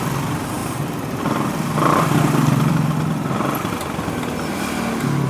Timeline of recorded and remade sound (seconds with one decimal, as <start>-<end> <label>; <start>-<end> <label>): 0.0-0.6 recorded; 0.6-3.8 remade; 3.8-5.3 recorded